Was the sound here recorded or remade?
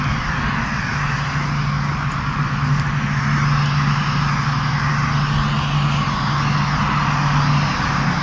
recorded